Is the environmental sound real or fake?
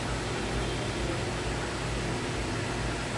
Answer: real